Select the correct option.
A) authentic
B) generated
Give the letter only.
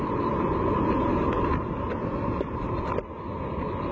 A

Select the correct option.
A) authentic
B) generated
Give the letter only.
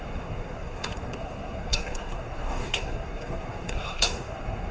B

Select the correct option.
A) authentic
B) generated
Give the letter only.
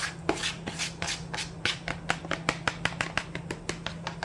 A